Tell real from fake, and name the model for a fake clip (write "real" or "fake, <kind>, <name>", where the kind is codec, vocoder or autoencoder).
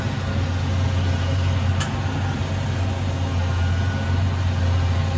real